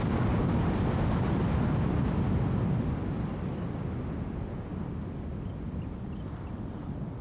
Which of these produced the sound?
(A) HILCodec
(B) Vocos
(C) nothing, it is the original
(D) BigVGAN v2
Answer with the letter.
C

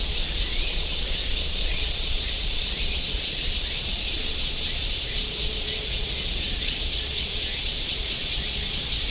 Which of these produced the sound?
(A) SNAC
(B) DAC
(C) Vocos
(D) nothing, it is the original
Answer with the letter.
C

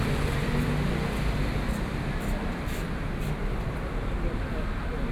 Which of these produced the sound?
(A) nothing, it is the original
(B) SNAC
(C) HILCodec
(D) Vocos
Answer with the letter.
A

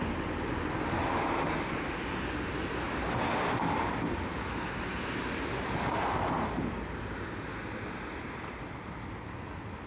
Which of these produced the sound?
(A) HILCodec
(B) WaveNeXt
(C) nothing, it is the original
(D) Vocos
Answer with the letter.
C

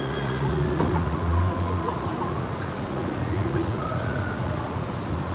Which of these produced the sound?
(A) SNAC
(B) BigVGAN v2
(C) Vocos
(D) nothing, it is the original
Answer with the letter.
C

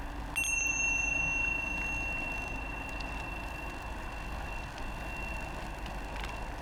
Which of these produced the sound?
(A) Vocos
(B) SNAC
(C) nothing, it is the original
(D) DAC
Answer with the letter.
C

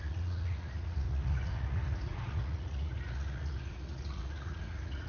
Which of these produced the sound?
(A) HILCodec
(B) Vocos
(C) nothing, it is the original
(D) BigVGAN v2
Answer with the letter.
B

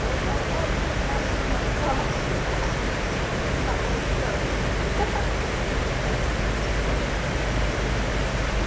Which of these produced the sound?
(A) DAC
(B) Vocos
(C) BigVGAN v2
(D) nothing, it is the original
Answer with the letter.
D